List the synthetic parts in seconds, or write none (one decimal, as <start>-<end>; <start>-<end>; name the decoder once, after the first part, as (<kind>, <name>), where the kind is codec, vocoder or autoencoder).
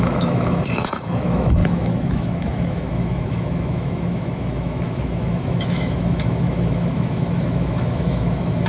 0.0-8.7 (autoencoder, DAC-VAE)